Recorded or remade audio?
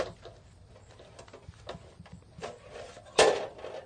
recorded